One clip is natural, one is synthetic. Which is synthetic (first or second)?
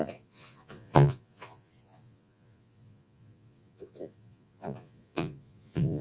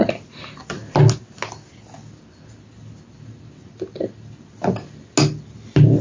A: first